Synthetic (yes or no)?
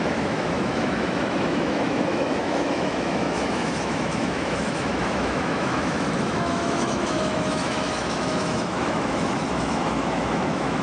yes